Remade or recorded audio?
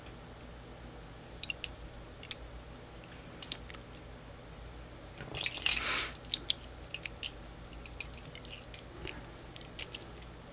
recorded